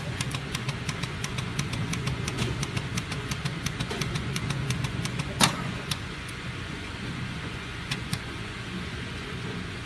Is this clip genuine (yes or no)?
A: no